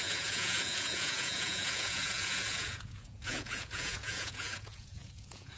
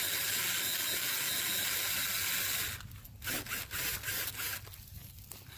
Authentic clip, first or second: second